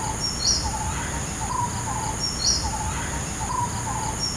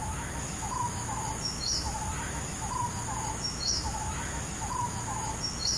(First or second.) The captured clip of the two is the first